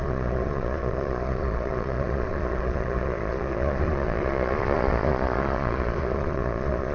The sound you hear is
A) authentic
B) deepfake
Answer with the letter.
B